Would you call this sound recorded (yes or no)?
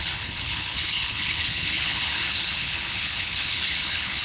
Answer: no